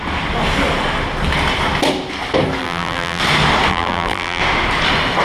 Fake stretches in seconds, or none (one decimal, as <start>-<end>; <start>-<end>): 2.6-3.2; 3.7-4.4